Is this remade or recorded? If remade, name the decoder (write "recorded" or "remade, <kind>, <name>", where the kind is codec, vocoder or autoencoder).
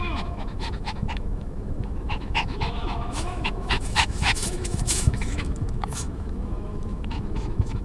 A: remade, autoencoder, DAC-VAE